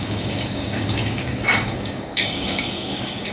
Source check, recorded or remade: remade